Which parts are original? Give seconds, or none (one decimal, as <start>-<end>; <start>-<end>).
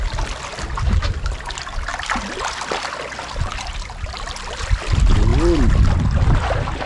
0.0-6.9